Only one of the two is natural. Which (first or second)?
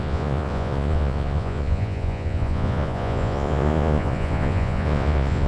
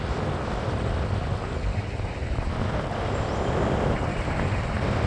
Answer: second